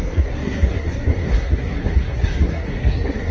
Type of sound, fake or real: fake